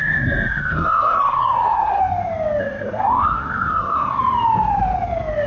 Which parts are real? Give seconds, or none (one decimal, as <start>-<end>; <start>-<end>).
2.0-2.6; 4.2-5.5